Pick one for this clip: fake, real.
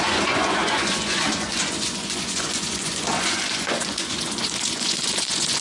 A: fake